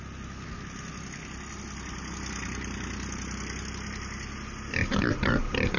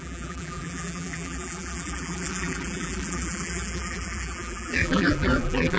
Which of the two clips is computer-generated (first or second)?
second